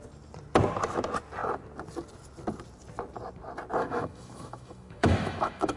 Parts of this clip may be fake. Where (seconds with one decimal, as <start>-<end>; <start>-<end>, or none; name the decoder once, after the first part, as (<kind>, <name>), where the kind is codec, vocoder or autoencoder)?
3.8-5.8 (autoencoder, DAC-VAE)